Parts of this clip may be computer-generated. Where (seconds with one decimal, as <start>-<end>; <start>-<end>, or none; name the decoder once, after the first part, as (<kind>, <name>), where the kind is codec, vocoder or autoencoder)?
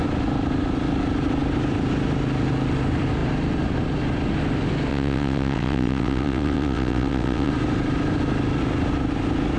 4.9-7.5 (vocoder, WaveNeXt)